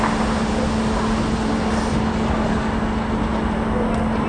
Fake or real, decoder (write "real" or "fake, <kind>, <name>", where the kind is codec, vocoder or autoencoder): real